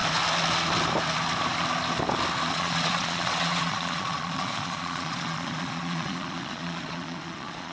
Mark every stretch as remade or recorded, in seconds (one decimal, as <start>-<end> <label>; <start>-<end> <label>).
0.0-2.5 recorded; 2.5-7.7 remade